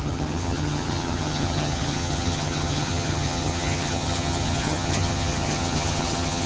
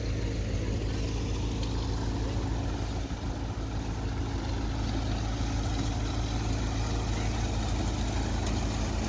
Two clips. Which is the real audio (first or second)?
second